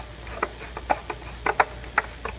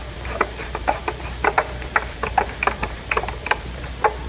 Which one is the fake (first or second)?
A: second